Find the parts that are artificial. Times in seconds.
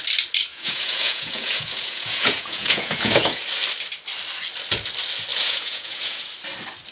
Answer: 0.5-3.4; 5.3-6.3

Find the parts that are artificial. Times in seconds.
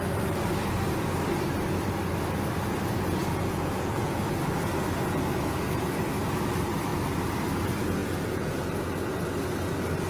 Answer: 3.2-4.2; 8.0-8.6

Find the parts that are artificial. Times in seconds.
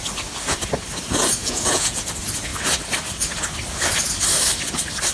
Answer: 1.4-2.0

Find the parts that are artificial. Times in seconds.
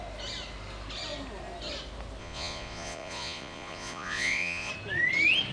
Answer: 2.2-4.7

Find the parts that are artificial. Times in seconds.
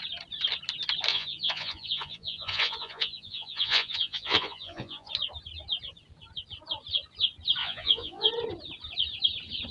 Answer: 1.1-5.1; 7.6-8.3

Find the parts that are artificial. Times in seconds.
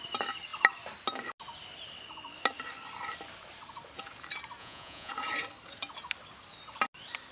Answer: 4.6-5.1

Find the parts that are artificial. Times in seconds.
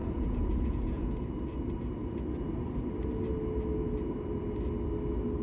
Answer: 0.0-1.1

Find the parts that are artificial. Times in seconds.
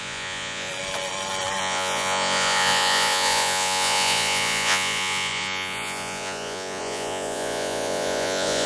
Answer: 0.0-0.7; 1.6-8.7